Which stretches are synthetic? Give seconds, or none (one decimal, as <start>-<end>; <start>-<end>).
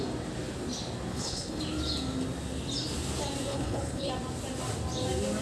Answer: 1.1-1.6; 3.5-4.1